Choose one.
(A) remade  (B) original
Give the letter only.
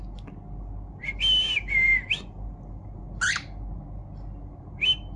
B